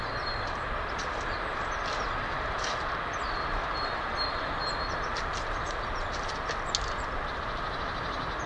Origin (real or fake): real